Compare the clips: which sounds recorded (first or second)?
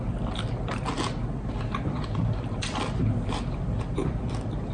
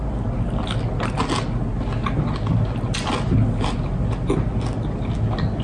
second